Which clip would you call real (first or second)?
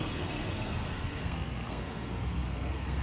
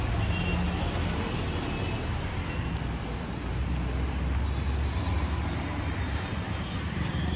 second